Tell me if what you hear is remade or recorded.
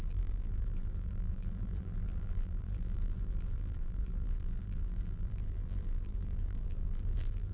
remade